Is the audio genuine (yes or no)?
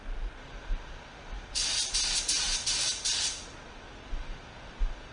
yes